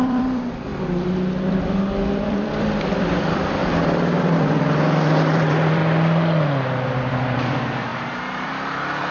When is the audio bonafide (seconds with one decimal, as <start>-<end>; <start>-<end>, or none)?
0.7-1.5; 3.6-4.2; 5.8-7.1